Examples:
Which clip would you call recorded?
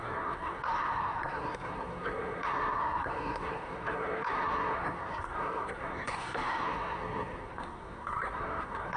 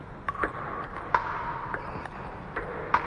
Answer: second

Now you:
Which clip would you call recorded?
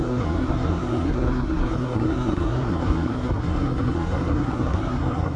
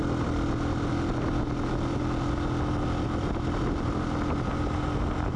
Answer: second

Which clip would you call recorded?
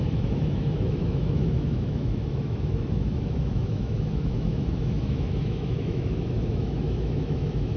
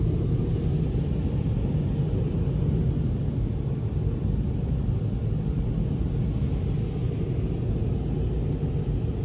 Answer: second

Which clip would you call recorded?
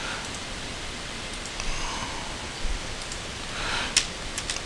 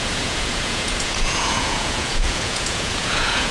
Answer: first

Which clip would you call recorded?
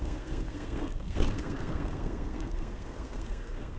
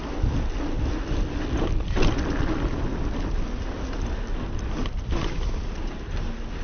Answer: second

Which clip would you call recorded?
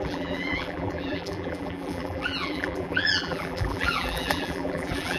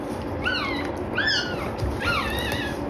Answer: second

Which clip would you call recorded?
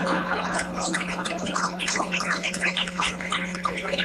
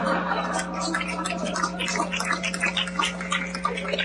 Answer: second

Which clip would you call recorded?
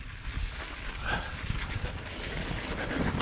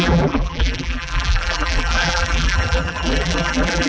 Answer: first